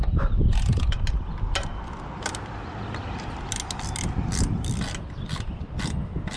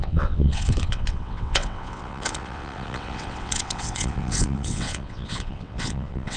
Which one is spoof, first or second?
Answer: second